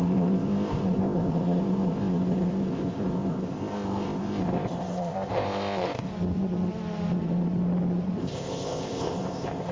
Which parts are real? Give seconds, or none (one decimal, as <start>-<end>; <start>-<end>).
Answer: 6.1-8.2